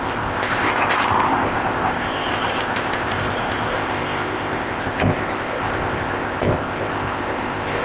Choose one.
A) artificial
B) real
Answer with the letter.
A